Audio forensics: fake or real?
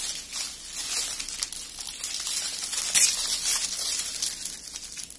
real